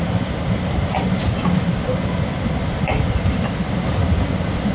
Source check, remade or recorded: recorded